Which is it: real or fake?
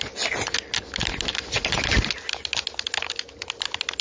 real